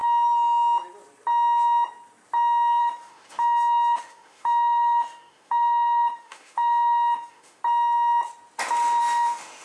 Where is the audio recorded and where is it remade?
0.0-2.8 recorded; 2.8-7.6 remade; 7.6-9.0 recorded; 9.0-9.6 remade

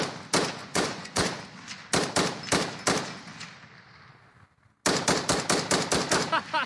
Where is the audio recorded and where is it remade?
0.0-0.6 recorded; 0.6-1.4 remade; 1.4-6.7 recorded

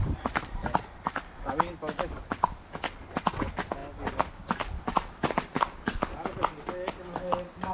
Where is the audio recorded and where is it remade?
0.0-7.7 recorded

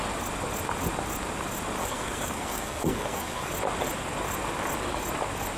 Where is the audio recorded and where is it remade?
0.0-1.8 recorded; 1.8-3.5 remade; 3.5-5.6 recorded

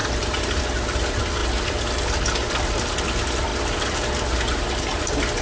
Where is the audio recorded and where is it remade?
0.0-0.6 remade; 0.6-5.4 recorded

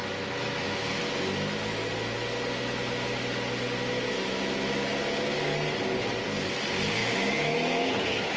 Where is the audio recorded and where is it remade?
0.0-1.0 remade; 1.0-4.1 recorded; 4.1-4.9 remade; 4.9-7.0 recorded; 7.0-7.9 remade; 7.9-8.4 recorded

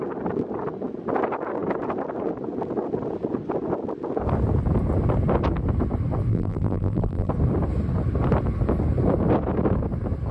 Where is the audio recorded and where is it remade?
0.0-6.3 recorded; 6.3-7.3 remade; 7.3-10.3 recorded

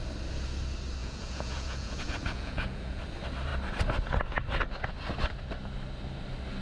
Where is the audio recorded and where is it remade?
0.0-1.0 recorded; 1.0-3.0 remade; 3.0-6.6 recorded